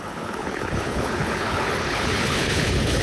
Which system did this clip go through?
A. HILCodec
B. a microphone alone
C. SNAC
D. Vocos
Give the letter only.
A